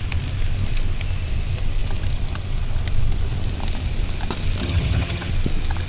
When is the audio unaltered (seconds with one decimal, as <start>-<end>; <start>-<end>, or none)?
0.0-4.6; 5.3-5.9